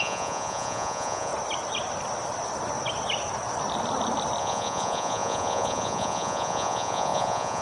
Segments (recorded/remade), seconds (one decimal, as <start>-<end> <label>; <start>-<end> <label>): 0.0-1.3 remade; 1.3-4.4 recorded; 4.4-7.6 remade